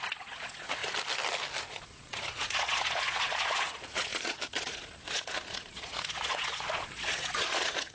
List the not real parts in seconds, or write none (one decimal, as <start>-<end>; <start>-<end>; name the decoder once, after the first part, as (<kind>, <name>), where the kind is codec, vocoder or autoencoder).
0.0-0.8 (vocoder, Vocos); 1.6-7.9